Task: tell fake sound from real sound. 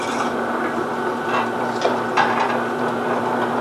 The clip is real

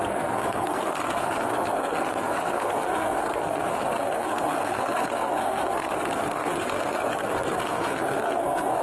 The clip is fake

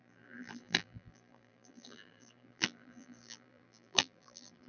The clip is fake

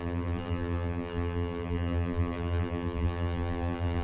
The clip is fake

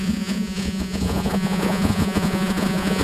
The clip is fake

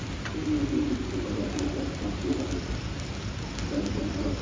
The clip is fake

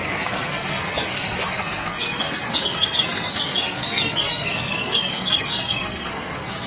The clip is fake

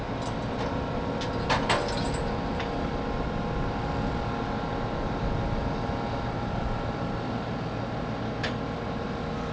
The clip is real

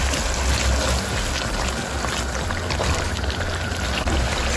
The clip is real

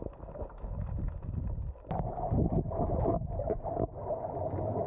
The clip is real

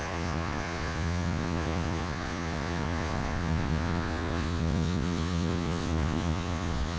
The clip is fake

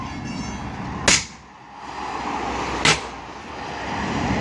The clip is real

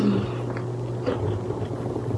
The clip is real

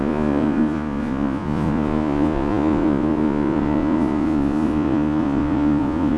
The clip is fake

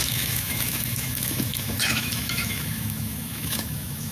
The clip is fake